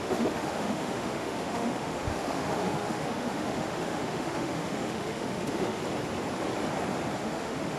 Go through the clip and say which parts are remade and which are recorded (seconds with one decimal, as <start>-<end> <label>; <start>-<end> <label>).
0.0-5.8 remade; 5.8-7.2 recorded; 7.2-7.8 remade